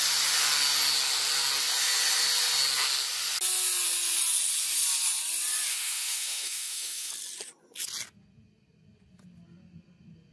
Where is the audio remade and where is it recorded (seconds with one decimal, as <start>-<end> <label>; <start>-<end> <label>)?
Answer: 0.0-5.7 recorded; 5.7-7.1 remade; 7.1-10.3 recorded